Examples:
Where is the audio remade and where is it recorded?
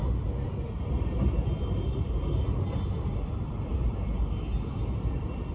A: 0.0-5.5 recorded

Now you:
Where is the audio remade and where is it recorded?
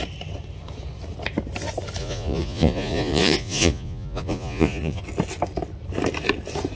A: 0.0-2.0 recorded; 2.0-5.0 remade; 5.0-6.8 recorded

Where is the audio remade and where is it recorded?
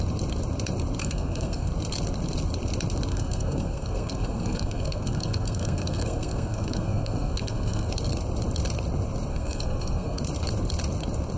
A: 0.0-1.0 recorded; 1.0-1.7 remade; 1.7-3.1 recorded; 3.1-7.9 remade; 7.9-9.3 recorded; 9.3-10.2 remade; 10.2-11.4 recorded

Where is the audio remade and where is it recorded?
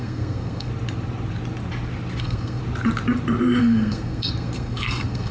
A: 0.0-0.7 remade; 0.7-2.2 recorded; 2.2-2.6 remade; 2.6-3.6 recorded; 3.6-5.3 remade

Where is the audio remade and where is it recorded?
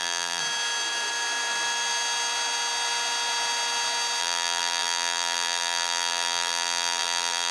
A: 0.0-0.4 remade; 0.4-4.2 recorded; 4.2-7.5 remade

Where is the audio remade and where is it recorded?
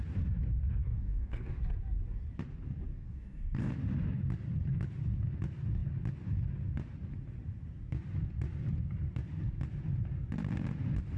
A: 0.0-0.8 recorded; 0.8-1.6 remade; 1.6-2.9 recorded; 2.9-3.7 remade; 3.7-11.2 recorded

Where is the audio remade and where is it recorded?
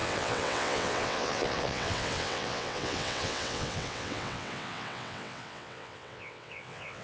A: 0.0-7.0 remade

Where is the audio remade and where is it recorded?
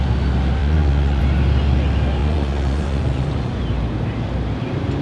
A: 0.0-0.6 recorded; 0.6-1.2 remade; 1.2-2.2 recorded; 2.2-3.6 remade; 3.6-5.0 recorded